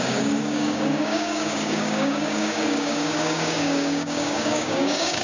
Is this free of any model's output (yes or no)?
no